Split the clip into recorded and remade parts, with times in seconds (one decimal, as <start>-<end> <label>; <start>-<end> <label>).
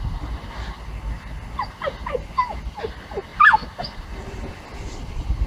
0.0-5.5 recorded